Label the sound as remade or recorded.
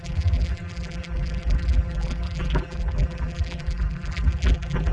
remade